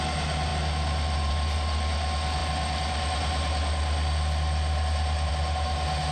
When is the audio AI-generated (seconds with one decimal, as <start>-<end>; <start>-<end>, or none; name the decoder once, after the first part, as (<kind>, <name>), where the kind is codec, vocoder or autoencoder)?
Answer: none